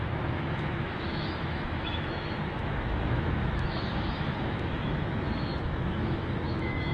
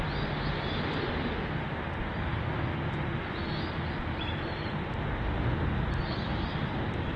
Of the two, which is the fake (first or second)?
first